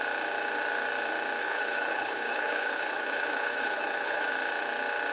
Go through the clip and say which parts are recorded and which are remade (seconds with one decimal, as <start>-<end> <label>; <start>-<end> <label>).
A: 0.0-1.4 recorded; 1.4-4.3 remade; 4.3-5.1 recorded